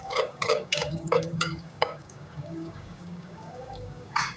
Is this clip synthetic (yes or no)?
yes